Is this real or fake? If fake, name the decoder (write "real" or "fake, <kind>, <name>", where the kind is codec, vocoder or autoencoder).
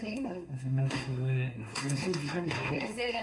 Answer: fake, codec, SNAC